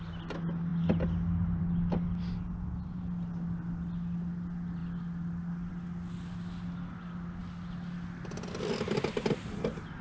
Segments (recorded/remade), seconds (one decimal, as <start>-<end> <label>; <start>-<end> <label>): 0.0-10.0 recorded